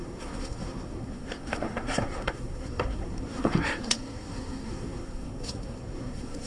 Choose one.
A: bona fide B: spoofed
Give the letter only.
B